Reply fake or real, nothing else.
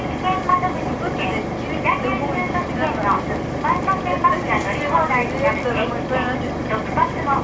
real